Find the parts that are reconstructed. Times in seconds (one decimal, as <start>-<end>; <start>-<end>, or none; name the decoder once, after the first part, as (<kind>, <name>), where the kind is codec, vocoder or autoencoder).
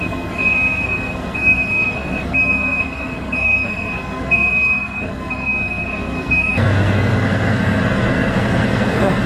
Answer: 0.0-9.3 (codec, SNAC)